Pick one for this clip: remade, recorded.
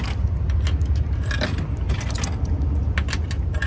recorded